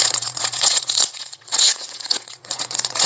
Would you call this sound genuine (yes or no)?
no